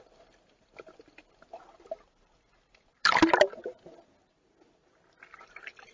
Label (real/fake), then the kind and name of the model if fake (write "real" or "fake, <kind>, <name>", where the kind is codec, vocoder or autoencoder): real